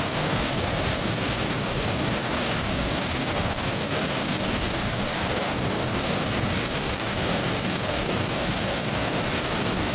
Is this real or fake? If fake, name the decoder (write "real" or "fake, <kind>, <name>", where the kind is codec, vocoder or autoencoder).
fake, codec, DAC